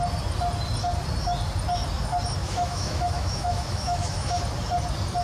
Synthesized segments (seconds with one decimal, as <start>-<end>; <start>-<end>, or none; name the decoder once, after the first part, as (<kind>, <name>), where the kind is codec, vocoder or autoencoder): 2.4-4.4 (autoencoder, DAC-VAE)

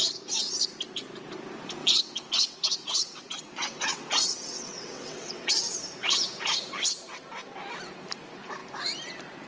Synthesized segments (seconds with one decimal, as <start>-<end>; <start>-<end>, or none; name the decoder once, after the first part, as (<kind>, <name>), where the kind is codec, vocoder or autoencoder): 1.8-5.5 (vocoder, WaveNeXt)

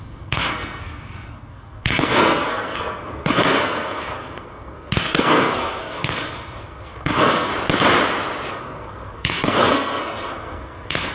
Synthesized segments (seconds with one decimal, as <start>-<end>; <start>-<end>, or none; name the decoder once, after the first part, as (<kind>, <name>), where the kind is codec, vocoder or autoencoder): 0.0-7.5 (codec, SNAC); 8.5-11.1

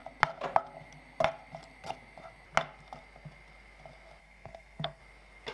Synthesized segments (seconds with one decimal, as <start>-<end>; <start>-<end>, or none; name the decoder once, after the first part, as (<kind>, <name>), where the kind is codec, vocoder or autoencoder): 4.2-5.0 (codec, SNAC)

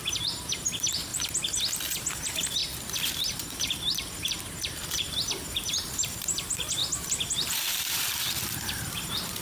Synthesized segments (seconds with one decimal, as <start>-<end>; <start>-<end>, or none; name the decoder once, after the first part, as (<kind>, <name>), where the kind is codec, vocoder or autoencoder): 0.0-1.1 (vocoder, BigVGAN v2); 2.0-2.6; 3.3-6.8; 7.7-9.4

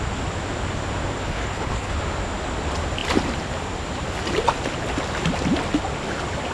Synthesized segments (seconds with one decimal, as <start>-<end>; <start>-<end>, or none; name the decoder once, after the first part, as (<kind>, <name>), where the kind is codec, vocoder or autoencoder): 1.2-2.0 (codec, HILCodec)

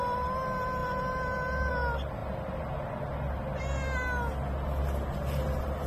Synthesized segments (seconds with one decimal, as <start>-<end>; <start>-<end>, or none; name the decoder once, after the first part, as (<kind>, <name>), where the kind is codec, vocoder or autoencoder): none